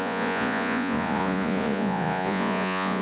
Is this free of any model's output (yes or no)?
no